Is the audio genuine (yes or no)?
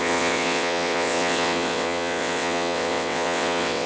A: no